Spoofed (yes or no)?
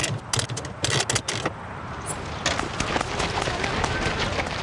no